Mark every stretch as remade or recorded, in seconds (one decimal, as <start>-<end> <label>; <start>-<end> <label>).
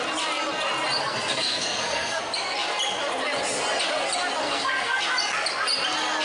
0.0-1.0 recorded; 1.0-2.2 remade; 2.2-4.4 recorded; 4.4-5.0 remade; 5.0-6.2 recorded